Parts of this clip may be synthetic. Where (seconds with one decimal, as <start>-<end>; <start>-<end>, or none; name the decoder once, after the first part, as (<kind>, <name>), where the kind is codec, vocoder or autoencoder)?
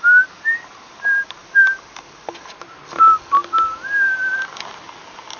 none